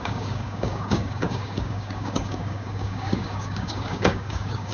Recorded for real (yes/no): no